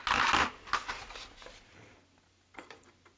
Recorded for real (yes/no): yes